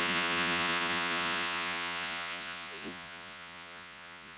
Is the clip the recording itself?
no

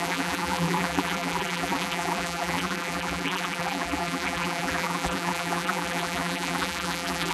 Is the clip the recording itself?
no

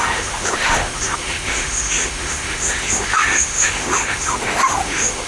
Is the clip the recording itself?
no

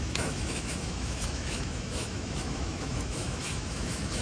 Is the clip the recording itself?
no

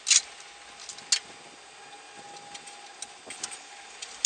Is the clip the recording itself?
yes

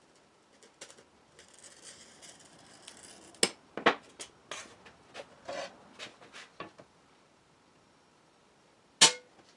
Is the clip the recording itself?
yes